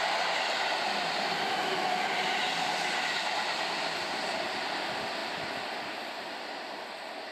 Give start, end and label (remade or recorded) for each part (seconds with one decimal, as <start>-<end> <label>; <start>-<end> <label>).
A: 0.0-7.3 recorded